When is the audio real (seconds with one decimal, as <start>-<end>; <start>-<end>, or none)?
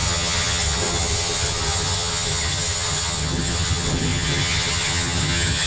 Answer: none